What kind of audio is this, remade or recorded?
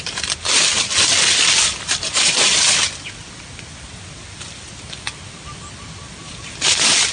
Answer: recorded